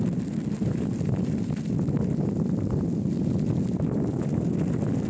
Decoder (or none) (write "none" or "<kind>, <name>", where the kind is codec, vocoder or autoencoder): none